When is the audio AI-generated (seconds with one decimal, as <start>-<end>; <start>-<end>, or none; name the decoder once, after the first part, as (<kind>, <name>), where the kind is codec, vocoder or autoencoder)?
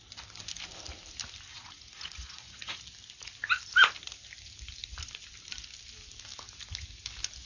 1.5-2.8 (vocoder, Vocos)